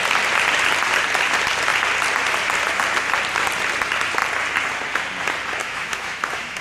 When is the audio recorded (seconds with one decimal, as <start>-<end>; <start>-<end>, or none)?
0.0-5.6